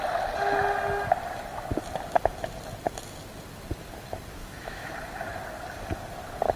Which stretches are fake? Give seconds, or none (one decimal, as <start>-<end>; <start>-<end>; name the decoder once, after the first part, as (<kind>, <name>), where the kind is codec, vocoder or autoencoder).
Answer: 4.4-4.9 (autoencoder, DAC-VAE)